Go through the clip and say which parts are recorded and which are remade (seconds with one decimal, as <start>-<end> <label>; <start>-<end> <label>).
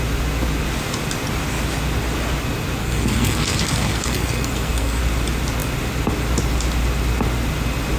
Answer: 0.0-2.8 recorded; 2.8-5.0 remade; 5.0-8.0 recorded